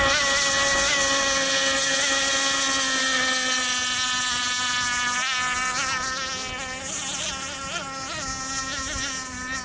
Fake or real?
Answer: real